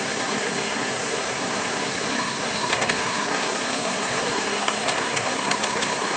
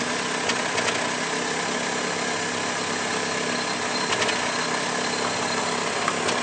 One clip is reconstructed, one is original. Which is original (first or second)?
second